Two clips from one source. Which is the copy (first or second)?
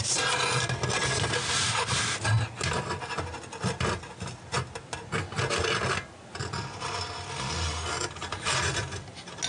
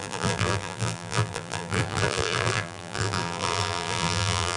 second